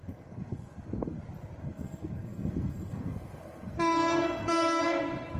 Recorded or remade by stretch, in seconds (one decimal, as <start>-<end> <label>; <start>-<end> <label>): 0.0-1.2 remade; 1.2-1.6 recorded; 1.6-4.8 remade; 4.8-5.4 recorded